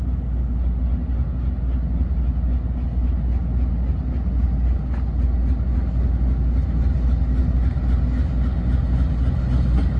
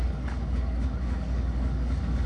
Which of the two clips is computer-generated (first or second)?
second